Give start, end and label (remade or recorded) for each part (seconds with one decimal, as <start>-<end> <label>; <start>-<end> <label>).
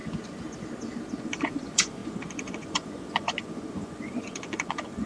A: 0.0-1.2 recorded; 1.2-5.1 remade